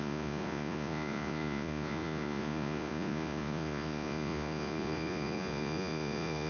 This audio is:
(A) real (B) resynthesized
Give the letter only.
B